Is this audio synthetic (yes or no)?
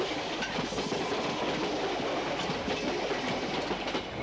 no